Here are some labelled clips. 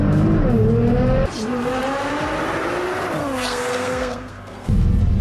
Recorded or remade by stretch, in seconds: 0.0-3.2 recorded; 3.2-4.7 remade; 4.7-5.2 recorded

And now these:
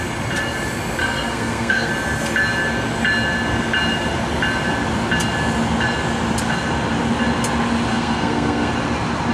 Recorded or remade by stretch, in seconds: 0.0-1.0 recorded; 1.0-1.9 remade; 1.9-7.9 recorded; 7.9-8.7 remade; 8.7-9.3 recorded